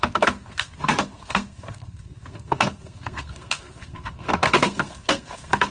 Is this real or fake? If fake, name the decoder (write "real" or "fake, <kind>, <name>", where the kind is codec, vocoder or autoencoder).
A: fake, codec, SNAC